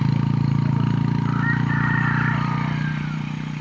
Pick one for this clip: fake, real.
real